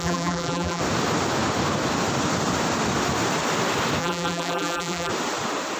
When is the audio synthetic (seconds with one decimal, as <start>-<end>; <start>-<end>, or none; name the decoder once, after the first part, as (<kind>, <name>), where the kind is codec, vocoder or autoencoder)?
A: 0.0-0.8 (vocoder, BigVGAN v2); 4.0-5.1